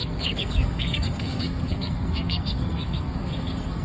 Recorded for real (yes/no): no